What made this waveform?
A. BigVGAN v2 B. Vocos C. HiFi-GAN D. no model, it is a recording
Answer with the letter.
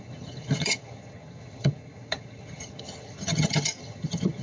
C